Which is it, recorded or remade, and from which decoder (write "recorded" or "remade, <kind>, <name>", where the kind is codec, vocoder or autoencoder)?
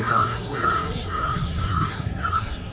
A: remade, codec, SNAC